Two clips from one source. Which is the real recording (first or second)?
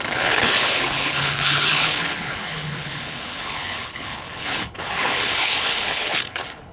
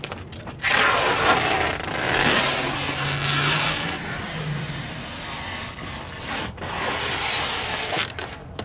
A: second